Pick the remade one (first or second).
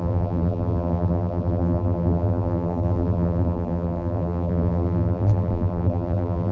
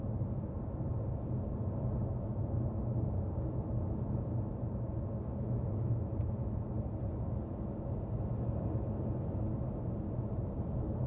first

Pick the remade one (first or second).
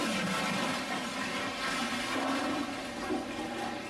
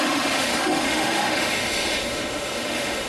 second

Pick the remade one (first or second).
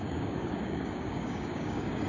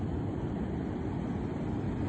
first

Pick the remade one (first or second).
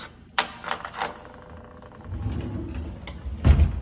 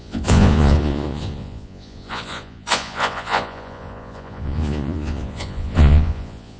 second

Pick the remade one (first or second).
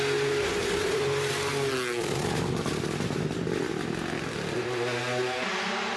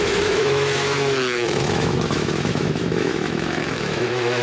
second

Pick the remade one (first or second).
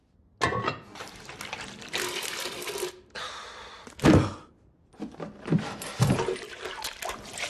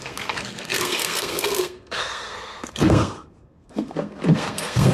second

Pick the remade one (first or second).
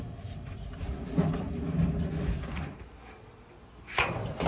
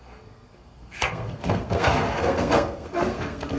second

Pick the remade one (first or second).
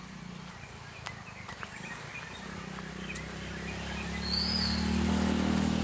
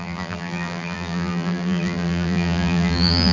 second